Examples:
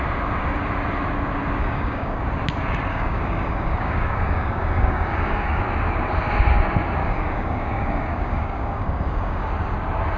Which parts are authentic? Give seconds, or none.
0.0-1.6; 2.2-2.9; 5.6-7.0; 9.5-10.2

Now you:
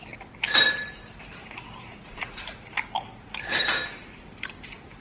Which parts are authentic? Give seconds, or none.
0.0-1.4; 2.4-5.0